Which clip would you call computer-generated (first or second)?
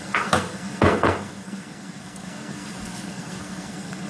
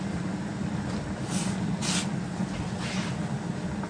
first